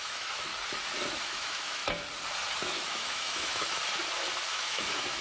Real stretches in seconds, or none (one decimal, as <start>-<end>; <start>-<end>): 0.5-1.1; 1.8-2.6; 3.8-4.5